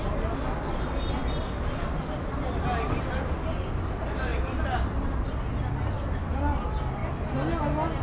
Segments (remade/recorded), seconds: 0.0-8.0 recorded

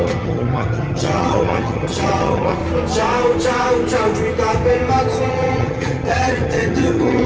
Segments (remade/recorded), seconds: 0.0-2.6 remade; 2.6-5.3 recorded; 5.3-7.3 remade